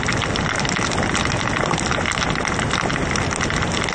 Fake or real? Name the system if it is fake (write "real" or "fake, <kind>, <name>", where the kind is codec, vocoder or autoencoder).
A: real